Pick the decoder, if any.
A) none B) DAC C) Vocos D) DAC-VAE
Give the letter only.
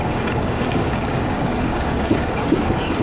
B